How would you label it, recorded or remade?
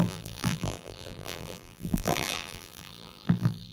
remade